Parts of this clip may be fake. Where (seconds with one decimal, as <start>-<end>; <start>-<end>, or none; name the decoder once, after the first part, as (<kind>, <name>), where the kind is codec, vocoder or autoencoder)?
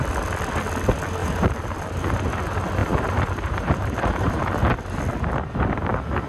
1.2-2.2 (vocoder, BigVGAN v2); 2.8-4.4